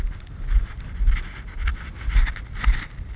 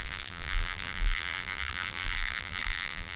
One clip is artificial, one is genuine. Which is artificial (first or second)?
second